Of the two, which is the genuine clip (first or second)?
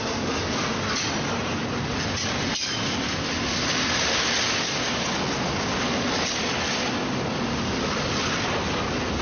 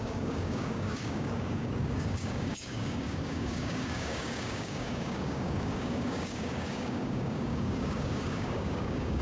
first